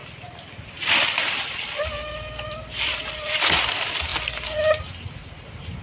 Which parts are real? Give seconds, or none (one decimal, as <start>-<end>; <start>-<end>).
4.1-4.8

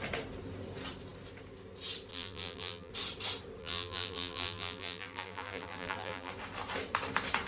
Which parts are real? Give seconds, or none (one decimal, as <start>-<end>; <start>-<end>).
0.0-2.1; 2.9-3.6; 6.3-7.5

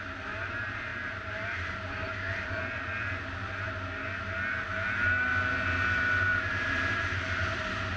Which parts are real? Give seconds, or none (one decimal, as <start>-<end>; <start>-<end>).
0.0-0.9; 2.5-6.3; 7.4-8.0

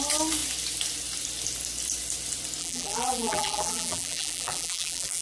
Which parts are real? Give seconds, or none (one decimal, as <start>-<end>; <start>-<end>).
0.0-2.6

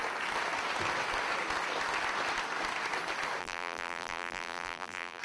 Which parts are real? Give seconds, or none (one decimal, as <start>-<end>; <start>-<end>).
0.0-3.4

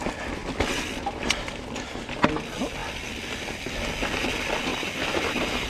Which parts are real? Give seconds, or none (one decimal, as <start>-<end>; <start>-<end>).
0.0-2.8; 3.8-4.7; 5.3-5.7

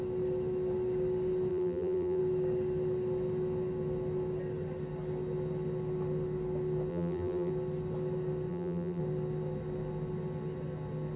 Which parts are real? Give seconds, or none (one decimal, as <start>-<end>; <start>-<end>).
0.0-1.5; 2.2-6.9; 7.5-8.5; 9.0-11.2

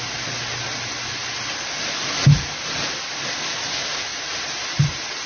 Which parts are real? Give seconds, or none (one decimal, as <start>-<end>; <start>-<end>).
0.0-4.1